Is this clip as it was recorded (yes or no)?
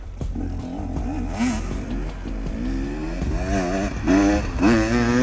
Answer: yes